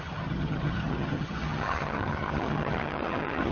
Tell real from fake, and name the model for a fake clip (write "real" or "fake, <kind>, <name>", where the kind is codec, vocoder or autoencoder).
fake, vocoder, HiFi-GAN